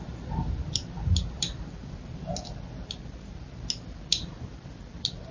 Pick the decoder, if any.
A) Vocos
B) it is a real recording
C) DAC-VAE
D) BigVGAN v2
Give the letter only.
B